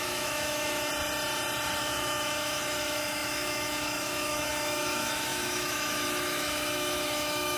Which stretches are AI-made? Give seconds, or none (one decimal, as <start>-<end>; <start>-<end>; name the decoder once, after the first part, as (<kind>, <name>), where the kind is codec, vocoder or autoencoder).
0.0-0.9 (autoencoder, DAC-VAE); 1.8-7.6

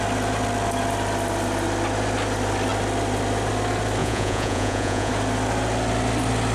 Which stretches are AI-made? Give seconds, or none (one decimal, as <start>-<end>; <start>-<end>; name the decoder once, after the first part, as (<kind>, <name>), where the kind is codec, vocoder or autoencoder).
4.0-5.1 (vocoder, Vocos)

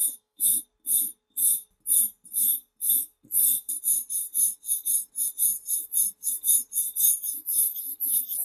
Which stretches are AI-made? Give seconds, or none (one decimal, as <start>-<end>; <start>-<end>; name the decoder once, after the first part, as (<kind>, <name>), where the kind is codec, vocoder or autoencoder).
0.0-0.6 (autoencoder, DAC-VAE)

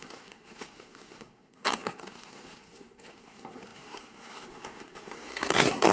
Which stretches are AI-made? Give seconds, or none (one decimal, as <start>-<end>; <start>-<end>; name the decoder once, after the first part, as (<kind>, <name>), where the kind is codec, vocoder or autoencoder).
0.0-5.9 (codec, SNAC)

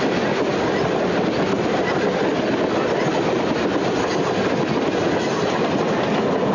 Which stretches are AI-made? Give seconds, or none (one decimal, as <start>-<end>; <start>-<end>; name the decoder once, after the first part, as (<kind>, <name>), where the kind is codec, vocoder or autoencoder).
none

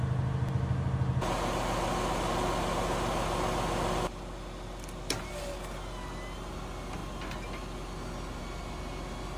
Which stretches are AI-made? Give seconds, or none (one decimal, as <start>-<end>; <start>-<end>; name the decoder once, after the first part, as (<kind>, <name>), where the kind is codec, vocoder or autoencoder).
none

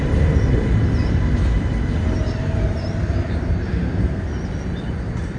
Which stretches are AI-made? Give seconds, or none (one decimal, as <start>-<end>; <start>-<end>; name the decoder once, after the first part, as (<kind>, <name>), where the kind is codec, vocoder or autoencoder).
3.7-4.3 (codec, SNAC)

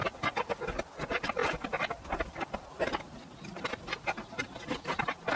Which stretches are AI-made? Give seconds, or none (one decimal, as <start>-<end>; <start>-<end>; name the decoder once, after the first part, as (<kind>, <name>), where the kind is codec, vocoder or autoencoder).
1.4-4.6 (vocoder, BigVGAN v2)